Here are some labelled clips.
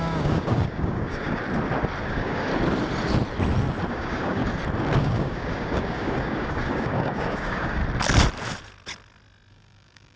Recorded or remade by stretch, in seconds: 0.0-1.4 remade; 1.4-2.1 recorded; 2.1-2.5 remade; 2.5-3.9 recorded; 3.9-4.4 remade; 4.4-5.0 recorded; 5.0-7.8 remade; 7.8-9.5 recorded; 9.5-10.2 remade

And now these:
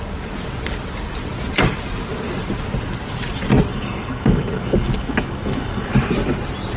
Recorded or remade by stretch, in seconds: 0.0-3.7 recorded; 3.7-5.9 remade; 5.9-6.8 recorded

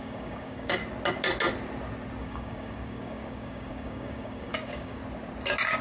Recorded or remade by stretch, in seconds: 0.0-0.8 remade; 0.8-2.2 recorded; 2.2-5.0 remade; 5.0-5.8 recorded

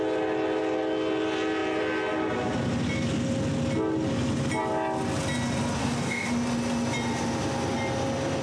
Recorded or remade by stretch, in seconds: 0.0-5.8 recorded; 5.8-6.3 remade; 6.3-8.4 recorded